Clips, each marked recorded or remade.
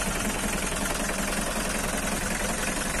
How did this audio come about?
recorded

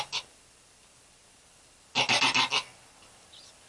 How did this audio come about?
recorded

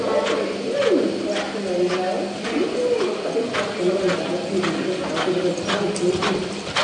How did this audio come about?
recorded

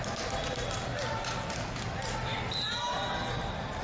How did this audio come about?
recorded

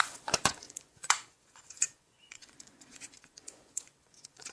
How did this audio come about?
remade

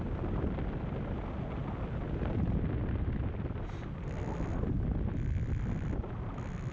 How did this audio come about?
recorded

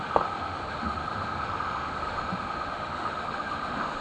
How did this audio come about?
remade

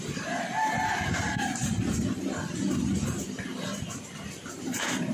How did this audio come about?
remade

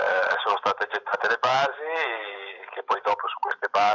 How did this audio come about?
remade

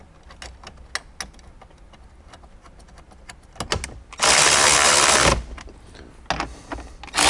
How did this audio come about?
recorded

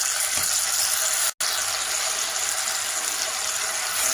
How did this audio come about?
recorded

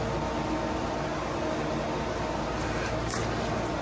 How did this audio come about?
recorded